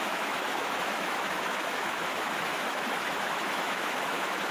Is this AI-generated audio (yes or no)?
yes